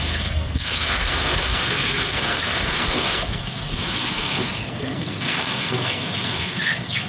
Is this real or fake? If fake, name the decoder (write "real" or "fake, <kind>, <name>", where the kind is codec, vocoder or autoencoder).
fake, codec, SNAC